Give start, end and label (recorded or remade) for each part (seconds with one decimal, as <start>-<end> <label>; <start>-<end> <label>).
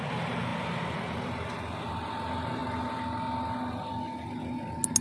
0.0-5.0 recorded